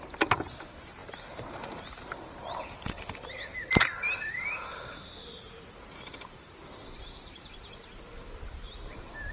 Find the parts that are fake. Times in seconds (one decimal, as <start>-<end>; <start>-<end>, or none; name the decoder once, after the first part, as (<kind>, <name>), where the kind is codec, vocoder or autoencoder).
0.0-9.3 (vocoder, BigVGAN v2)